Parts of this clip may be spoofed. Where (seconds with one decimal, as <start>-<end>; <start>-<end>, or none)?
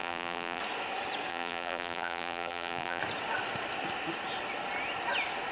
0.0-0.6; 1.3-3.0